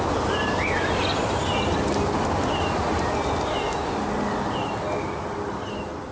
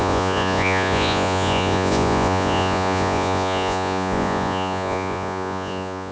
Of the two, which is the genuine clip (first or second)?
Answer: first